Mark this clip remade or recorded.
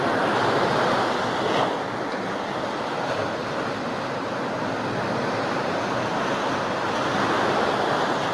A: recorded